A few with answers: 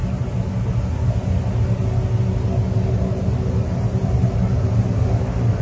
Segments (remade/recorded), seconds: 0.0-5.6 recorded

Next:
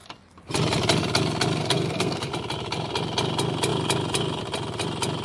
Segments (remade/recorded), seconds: 0.0-1.6 recorded; 1.6-2.3 remade; 2.3-5.2 recorded

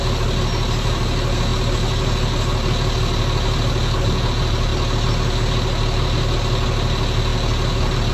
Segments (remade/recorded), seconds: 0.0-8.1 recorded

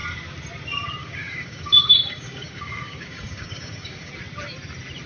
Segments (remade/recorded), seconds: 0.0-1.0 recorded; 1.0-4.1 remade; 4.1-5.1 recorded

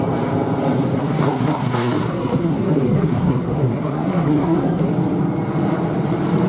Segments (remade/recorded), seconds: 0.0-1.0 recorded; 1.0-4.9 remade; 4.9-6.5 recorded